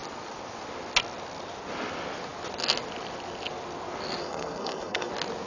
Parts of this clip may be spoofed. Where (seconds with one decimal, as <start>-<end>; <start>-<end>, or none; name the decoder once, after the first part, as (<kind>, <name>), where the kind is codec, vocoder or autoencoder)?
4.2-5.1 (codec, SNAC)